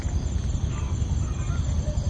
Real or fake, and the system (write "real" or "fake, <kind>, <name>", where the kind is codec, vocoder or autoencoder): real